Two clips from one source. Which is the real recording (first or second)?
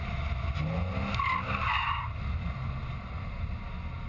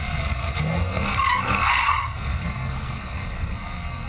first